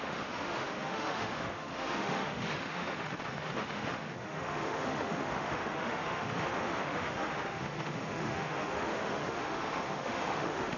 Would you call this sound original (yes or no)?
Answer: no